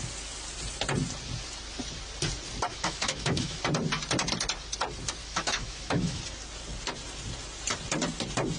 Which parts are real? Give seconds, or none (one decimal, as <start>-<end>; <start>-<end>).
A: 0.0-2.7; 3.6-5.2; 6.2-8.6

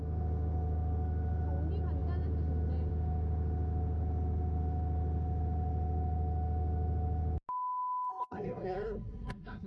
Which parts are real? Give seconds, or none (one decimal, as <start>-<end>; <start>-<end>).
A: 0.0-8.1

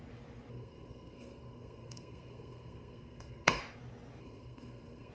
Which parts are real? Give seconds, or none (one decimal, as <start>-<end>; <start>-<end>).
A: 0.0-0.5; 3.6-4.2